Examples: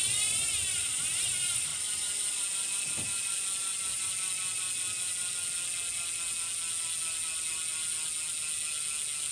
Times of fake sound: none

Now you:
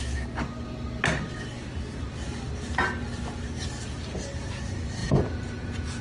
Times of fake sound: 5.0-6.0 (vocoder, Vocos)

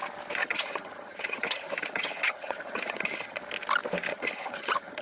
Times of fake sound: 0.4-3.4 (vocoder, HiFi-GAN); 4.1-5.0

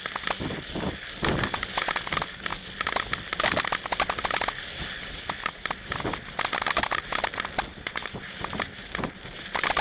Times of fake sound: 7.7-9.2 (vocoder, BigVGAN v2)